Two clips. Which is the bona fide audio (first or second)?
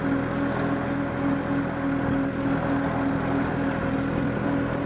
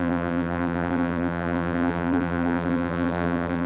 first